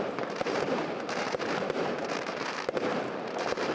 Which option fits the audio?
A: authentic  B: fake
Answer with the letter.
B